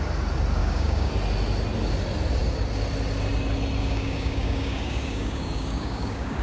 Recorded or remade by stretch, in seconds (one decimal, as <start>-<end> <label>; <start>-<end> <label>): 0.0-0.6 recorded; 0.6-1.1 remade; 1.1-3.8 recorded; 3.8-6.4 remade